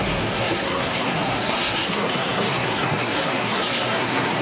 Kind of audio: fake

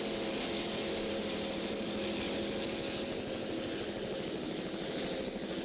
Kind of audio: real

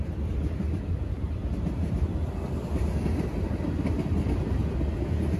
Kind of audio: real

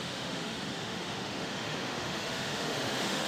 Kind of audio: fake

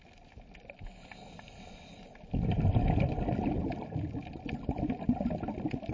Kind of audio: real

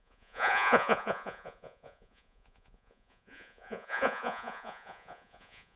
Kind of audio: fake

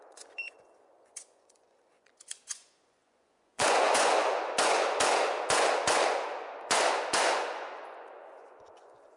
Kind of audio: fake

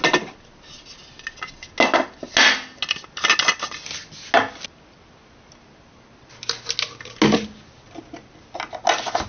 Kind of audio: real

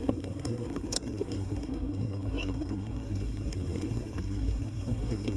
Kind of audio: fake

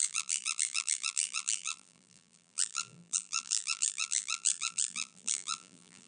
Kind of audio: fake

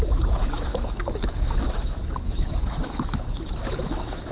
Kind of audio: fake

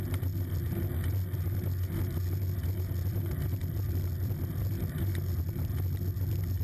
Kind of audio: real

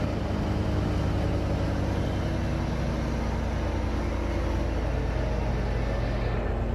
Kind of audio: real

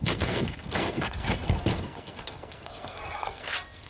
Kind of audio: fake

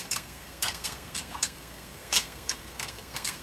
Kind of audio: fake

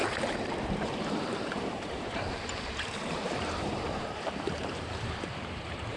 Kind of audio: fake